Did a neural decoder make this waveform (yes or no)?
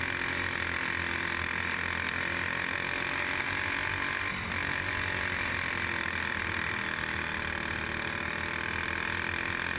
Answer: no